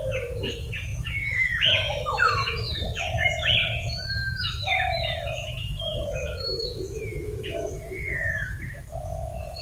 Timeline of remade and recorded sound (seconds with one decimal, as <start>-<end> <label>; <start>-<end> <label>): 0.0-9.6 remade